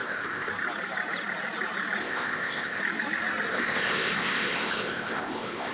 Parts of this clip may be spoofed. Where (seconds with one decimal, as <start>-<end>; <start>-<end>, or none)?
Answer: 0.0-0.5; 2.0-2.8; 3.5-5.7